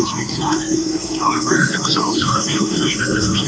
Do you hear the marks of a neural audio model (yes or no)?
yes